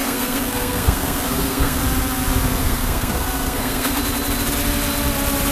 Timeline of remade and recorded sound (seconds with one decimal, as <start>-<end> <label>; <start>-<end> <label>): 0.0-1.8 remade; 1.8-2.6 recorded; 2.6-4.0 remade; 4.0-5.5 recorded